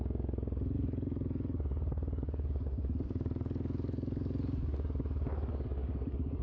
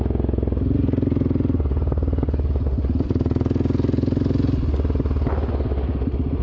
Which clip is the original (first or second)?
second